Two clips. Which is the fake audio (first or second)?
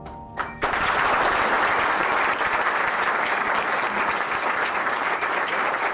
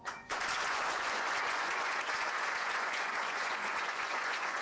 second